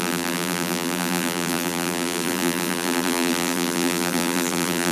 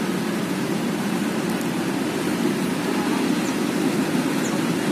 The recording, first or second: second